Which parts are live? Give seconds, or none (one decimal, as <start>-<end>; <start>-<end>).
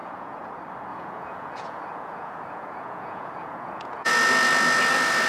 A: 0.5-0.9; 4.1-5.3